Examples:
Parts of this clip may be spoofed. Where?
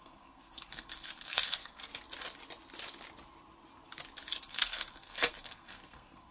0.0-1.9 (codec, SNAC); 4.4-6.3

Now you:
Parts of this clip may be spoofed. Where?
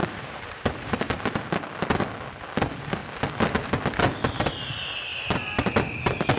0.0-1.1 (vocoder, BigVGAN v2); 5.1-5.6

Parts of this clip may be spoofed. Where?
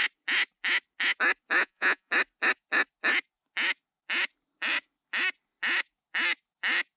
1.6-2.1 (vocoder, Vocos)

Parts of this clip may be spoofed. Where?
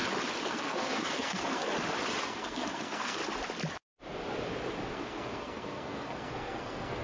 0.5-1.6 (codec, SNAC); 2.2-3.2; 4.9-7.0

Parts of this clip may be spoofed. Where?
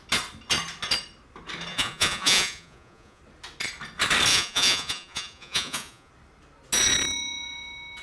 1.7-3.2 (vocoder, Vocos); 4.3-6.1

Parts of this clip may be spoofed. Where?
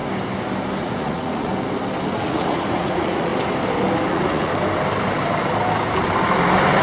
0.8-1.5 (vocoder, Vocos); 2.1-3.3; 4.1-4.5